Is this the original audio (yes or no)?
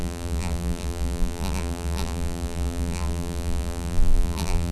no